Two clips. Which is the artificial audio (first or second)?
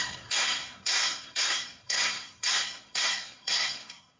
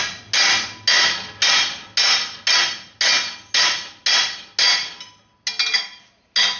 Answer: first